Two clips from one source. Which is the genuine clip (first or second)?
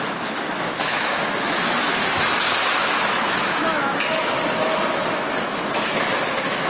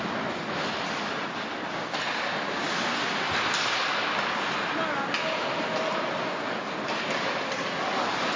second